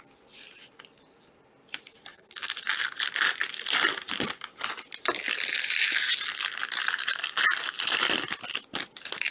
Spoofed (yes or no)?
yes